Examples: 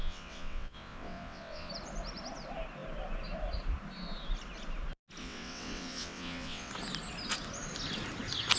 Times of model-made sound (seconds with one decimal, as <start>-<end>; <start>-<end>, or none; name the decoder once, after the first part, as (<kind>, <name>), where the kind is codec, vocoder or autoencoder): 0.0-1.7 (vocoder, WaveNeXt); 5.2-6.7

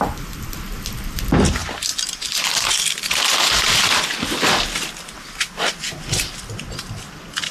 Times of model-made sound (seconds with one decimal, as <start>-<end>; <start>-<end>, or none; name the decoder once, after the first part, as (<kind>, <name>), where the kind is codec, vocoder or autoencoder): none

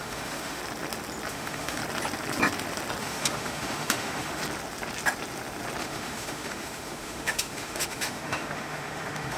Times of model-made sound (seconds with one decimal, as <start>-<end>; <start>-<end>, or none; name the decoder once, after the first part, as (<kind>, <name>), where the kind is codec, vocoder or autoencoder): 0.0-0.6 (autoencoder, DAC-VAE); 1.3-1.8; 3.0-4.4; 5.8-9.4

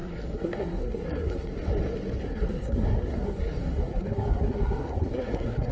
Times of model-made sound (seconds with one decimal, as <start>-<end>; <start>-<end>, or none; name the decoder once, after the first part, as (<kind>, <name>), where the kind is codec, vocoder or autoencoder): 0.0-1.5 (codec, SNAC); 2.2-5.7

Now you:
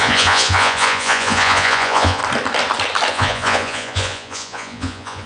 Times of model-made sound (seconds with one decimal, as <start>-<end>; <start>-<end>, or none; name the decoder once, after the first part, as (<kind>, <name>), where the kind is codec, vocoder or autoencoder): 0.0-2.2 (vocoder, Vocos); 3.1-5.3